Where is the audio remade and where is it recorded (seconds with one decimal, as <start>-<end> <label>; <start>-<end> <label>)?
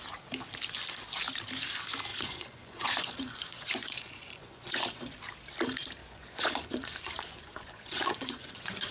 0.0-2.1 recorded; 2.1-5.2 remade; 5.2-6.0 recorded; 6.0-8.9 remade